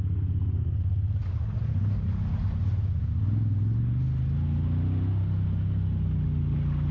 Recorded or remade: recorded